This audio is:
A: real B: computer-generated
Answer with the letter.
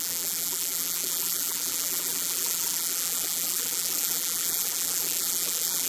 B